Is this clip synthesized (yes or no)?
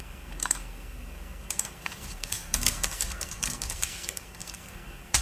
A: yes